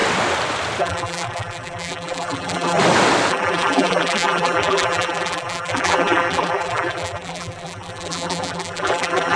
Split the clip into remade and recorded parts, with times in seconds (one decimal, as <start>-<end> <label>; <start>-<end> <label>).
0.0-0.8 recorded; 0.8-2.8 remade; 2.8-3.3 recorded; 3.3-9.4 remade